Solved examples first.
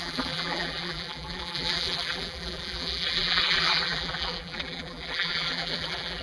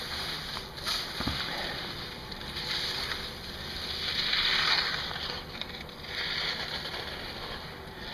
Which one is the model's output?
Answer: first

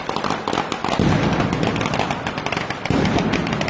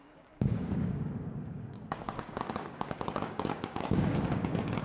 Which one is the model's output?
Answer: second